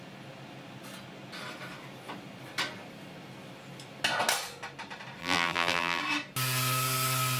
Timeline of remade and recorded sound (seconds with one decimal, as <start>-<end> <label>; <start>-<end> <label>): 0.0-5.2 recorded; 5.2-6.0 remade; 6.0-7.4 recorded